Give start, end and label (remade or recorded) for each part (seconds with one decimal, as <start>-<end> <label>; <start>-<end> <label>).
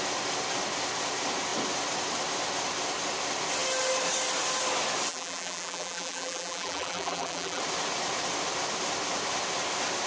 0.0-5.1 recorded; 5.1-7.6 remade; 7.6-10.1 recorded